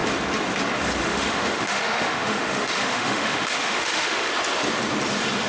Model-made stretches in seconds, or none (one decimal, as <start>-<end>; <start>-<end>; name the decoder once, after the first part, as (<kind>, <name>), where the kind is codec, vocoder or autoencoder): 1.0-4.3 (autoencoder, DAC-VAE)